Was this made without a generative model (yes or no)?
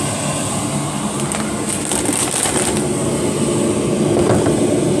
yes